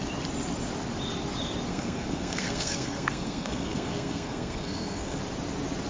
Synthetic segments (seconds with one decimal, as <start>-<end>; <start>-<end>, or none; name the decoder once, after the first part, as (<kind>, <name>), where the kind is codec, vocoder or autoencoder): 1.7-5.2 (codec, SNAC)